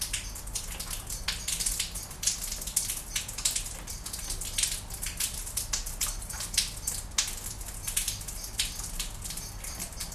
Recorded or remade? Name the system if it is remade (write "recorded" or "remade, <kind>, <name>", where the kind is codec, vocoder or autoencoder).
recorded